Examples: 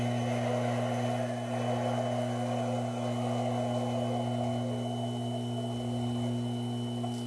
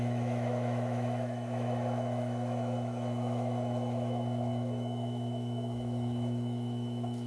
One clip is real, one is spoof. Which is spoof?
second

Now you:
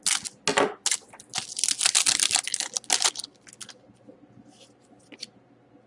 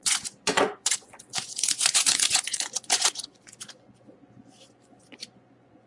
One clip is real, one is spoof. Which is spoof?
second